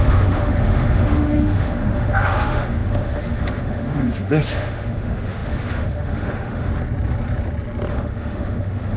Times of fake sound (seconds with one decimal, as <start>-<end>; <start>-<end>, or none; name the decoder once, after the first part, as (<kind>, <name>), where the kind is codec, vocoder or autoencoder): 0.0-6.7 (autoencoder, DAC-VAE); 7.9-9.0